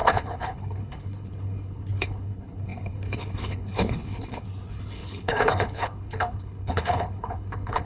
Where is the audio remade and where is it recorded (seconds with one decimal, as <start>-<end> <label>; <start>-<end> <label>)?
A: 0.0-7.9 remade